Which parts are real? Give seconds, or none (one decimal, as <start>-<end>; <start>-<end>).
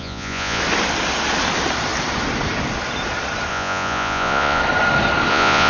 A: 0.6-3.5; 4.6-5.3